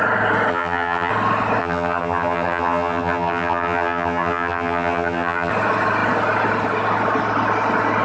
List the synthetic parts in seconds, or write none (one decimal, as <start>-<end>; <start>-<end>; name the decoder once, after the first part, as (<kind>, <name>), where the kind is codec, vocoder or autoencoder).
0.5-1.1 (vocoder, BigVGAN v2); 1.6-5.5